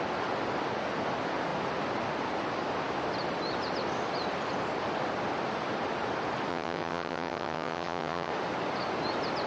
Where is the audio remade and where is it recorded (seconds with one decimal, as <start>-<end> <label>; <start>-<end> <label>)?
0.0-6.5 recorded; 6.5-8.3 remade; 8.3-9.5 recorded